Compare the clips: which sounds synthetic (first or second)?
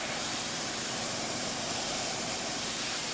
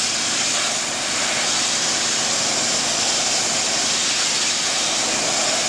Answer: first